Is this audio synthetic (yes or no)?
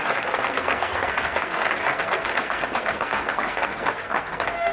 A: yes